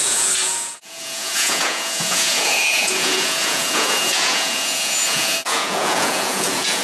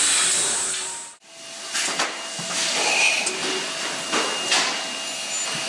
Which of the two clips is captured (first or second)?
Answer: second